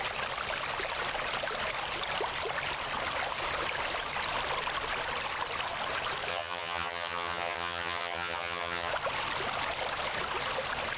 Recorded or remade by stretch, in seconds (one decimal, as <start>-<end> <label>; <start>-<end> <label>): 0.0-6.3 recorded; 6.3-8.9 remade; 8.9-11.0 recorded